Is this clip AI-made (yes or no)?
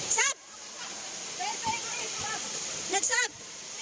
yes